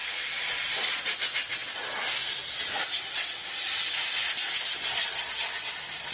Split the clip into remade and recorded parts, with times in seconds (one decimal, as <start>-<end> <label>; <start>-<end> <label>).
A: 0.0-6.1 recorded